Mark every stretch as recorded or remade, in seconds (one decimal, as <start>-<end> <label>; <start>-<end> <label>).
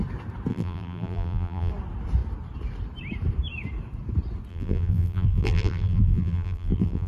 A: 0.0-0.5 recorded; 0.5-1.7 remade; 1.7-4.5 recorded; 4.5-7.1 remade